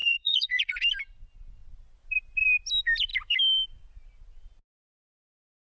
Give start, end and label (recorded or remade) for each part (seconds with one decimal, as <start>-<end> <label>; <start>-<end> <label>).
0.0-0.8 remade; 0.8-5.7 recorded